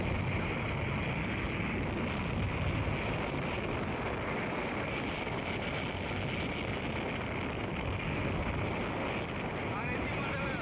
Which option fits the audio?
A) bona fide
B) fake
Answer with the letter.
A